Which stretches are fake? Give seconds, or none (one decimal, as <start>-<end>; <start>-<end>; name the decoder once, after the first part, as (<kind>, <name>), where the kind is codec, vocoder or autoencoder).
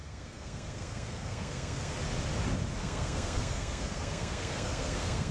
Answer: 0.0-2.0 (codec, SNAC); 2.8-5.3